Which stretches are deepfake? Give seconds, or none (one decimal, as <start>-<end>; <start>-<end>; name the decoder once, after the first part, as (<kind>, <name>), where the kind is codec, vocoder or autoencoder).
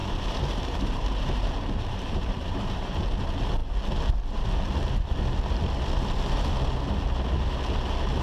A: 0.0-2.9 (vocoder, BigVGAN v2)